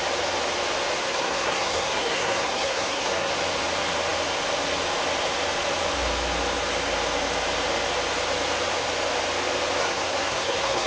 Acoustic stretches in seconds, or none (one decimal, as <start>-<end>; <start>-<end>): 0.0-1.0; 3.3-9.8